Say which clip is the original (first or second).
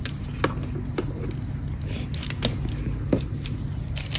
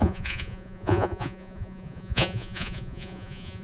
first